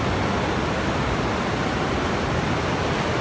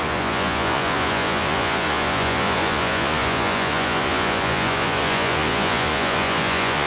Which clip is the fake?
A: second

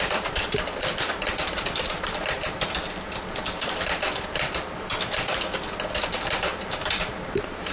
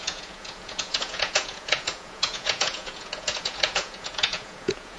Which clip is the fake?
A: second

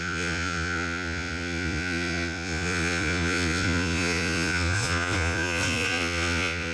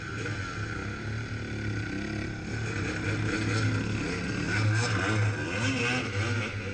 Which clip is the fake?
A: first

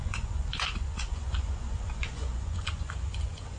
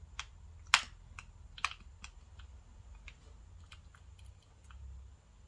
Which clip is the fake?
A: first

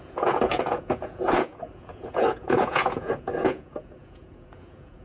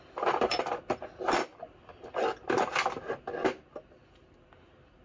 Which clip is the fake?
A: first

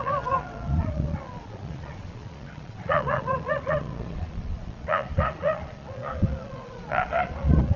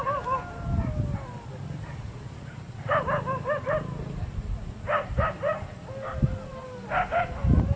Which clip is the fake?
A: first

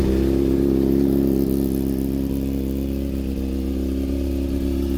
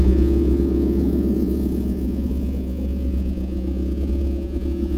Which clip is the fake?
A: second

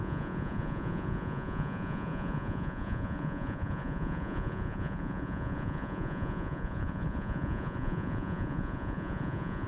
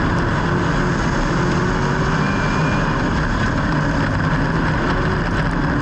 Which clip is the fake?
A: first